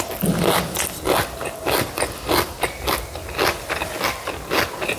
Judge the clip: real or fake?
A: real